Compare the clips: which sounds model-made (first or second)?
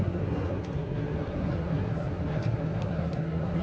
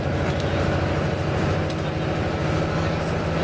first